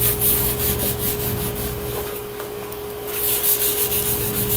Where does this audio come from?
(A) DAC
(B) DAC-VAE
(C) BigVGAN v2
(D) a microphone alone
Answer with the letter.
A